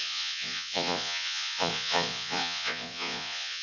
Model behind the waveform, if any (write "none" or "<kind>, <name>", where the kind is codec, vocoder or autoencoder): vocoder, Vocos